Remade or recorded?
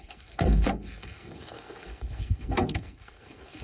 remade